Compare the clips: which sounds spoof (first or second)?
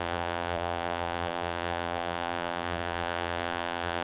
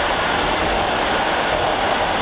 first